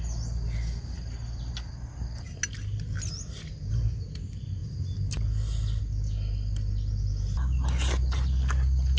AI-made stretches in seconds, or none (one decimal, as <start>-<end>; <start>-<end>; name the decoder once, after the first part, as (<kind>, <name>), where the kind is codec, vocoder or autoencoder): 4.6-5.8 (vocoder, BigVGAN v2)